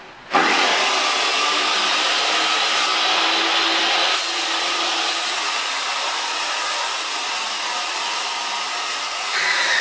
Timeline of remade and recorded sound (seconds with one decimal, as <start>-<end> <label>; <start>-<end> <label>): 0.0-0.7 remade; 0.7-3.9 recorded; 3.9-8.4 remade; 8.4-8.9 recorded; 8.9-9.8 remade